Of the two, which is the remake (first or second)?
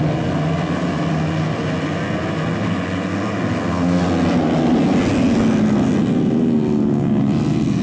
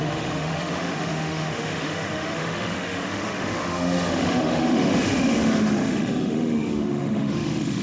second